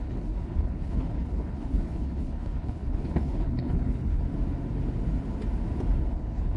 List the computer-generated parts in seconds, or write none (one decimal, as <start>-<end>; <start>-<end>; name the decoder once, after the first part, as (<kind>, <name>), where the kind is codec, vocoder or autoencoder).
0.0-4.2 (codec, HILCodec); 6.1-6.6